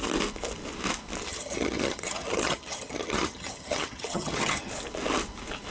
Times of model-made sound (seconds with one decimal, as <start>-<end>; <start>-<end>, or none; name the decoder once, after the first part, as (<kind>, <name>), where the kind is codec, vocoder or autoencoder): 1.3-4.7 (vocoder, HiFi-GAN)

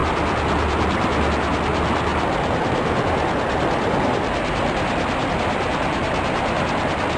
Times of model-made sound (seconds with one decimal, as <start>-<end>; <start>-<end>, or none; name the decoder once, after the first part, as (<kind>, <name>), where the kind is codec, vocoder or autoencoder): none